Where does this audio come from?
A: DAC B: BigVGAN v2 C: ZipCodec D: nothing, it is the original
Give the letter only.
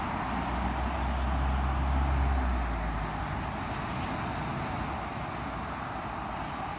D